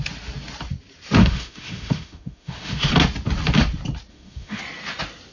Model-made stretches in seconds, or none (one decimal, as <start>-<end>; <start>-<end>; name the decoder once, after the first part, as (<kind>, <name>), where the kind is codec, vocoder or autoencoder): 1.2-2.9 (autoencoder, DAC-VAE); 4.1-4.6